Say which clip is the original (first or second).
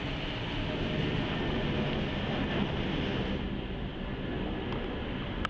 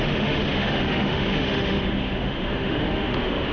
first